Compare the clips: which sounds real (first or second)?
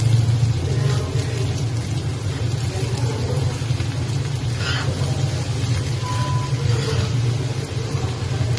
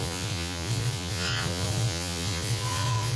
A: first